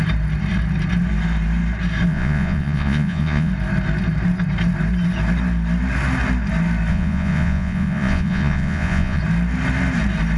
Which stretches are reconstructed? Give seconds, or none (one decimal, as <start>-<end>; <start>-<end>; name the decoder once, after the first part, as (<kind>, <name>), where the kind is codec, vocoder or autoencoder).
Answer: 2.1-3.5 (vocoder, Vocos); 6.9-9.2